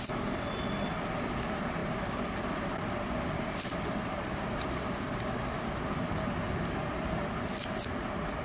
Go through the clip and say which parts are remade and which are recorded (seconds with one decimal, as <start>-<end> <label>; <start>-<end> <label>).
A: 0.0-1.8 recorded; 1.8-6.8 remade; 6.8-8.4 recorded

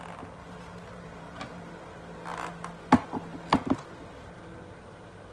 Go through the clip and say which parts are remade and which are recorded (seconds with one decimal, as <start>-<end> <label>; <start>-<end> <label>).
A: 0.0-0.4 recorded; 0.4-1.7 remade; 1.7-5.3 recorded